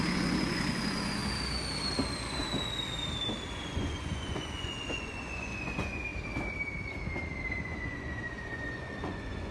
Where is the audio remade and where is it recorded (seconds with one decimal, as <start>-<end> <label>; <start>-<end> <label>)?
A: 0.0-1.2 remade; 1.2-3.5 recorded; 3.5-6.1 remade; 6.1-7.5 recorded; 7.5-9.5 remade